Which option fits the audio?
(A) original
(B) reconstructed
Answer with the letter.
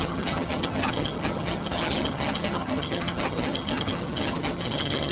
B